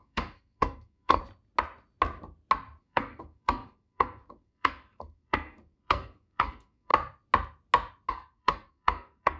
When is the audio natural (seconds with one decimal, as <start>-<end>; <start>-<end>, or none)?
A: 1.2-2.8; 6.9-8.1